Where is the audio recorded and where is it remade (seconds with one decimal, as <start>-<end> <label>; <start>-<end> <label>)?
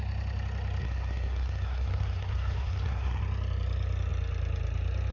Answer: 0.0-0.8 recorded; 0.8-3.2 remade; 3.2-5.1 recorded